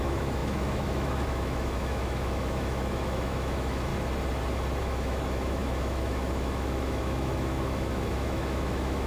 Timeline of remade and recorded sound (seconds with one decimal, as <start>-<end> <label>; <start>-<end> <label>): 0.0-3.9 remade; 3.9-4.8 recorded; 4.8-9.1 remade